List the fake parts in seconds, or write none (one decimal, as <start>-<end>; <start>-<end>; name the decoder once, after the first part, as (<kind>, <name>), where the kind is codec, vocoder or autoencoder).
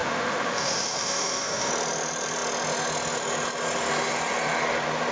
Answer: 0.0-1.7 (autoencoder, DAC-VAE)